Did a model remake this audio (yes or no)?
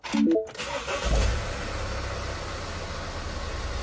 no